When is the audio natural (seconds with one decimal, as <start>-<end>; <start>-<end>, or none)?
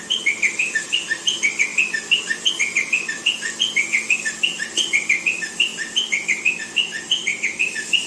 0.0-8.1